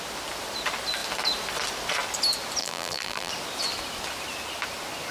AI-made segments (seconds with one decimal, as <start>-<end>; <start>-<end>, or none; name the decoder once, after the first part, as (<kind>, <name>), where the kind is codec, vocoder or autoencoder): 2.6-3.3 (vocoder, BigVGAN v2)